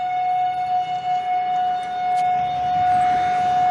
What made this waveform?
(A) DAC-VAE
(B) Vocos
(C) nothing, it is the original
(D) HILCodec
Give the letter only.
C